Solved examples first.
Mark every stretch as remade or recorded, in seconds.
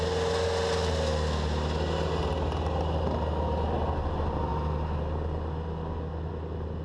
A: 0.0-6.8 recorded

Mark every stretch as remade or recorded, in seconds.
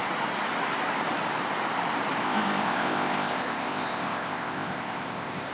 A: 0.0-2.2 recorded; 2.2-5.5 remade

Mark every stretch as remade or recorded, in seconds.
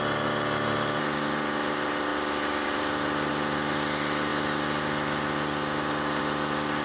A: 0.0-2.1 recorded; 2.1-3.3 remade; 3.3-6.8 recorded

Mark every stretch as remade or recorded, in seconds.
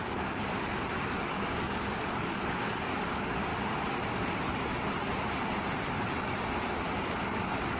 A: 0.0-3.5 remade; 3.5-6.8 recorded; 6.8-7.8 remade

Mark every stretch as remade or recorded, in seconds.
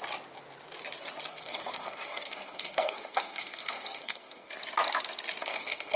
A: 0.0-1.3 recorded; 1.3-4.5 remade; 4.5-5.4 recorded; 5.4-6.0 remade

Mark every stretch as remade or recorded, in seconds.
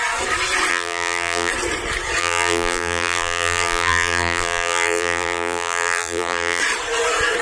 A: 0.0-0.7 recorded; 0.7-1.5 remade; 1.5-2.2 recorded; 2.2-6.6 remade; 6.6-7.4 recorded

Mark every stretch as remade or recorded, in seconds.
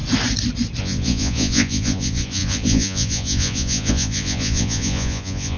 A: 0.0-0.8 recorded; 0.8-5.6 remade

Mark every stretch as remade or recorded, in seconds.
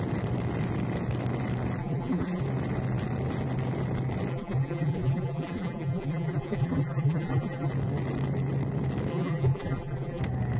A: 0.0-1.8 recorded; 1.8-2.4 remade; 2.4-4.3 recorded; 4.3-7.7 remade; 7.7-9.1 recorded; 9.1-10.2 remade; 10.2-10.6 recorded